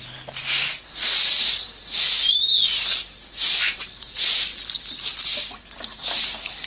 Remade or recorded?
recorded